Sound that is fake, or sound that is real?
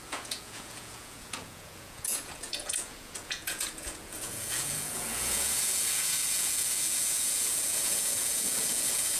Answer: fake